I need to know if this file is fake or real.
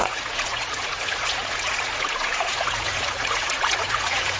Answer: fake